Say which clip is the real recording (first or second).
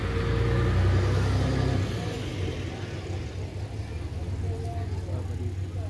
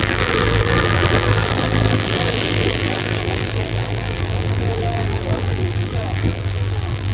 first